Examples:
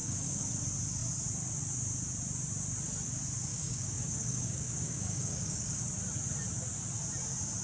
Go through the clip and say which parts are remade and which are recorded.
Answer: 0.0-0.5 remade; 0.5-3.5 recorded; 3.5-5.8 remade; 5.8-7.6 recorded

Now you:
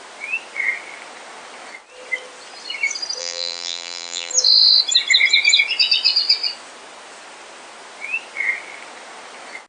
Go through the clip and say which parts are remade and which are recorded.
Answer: 0.0-3.2 recorded; 3.2-4.3 remade; 4.3-9.7 recorded

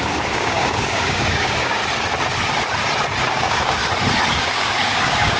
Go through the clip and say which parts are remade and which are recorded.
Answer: 0.0-1.8 remade; 1.8-3.3 recorded; 3.3-3.8 remade; 3.8-4.3 recorded; 4.3-5.4 remade

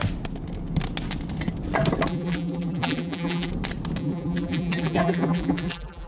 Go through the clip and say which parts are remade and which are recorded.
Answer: 0.0-2.1 recorded; 2.1-3.5 remade; 3.5-4.0 recorded; 4.0-6.1 remade